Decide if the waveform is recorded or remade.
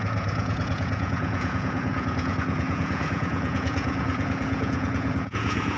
remade